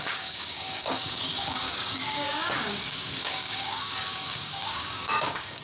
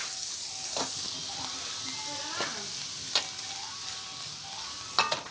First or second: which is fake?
first